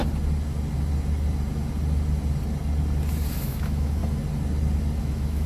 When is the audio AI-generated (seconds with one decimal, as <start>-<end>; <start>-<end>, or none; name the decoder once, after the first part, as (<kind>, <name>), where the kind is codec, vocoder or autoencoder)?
3.3-4.0 (autoencoder, DAC-VAE); 5.0-5.5